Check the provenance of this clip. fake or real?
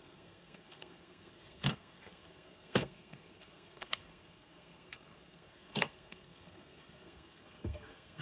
fake